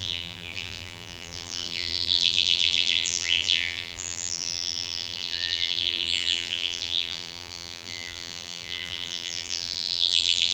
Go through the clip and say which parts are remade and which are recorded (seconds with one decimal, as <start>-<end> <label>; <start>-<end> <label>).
0.0-10.5 remade